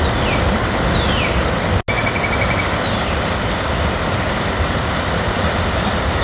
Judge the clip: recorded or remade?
recorded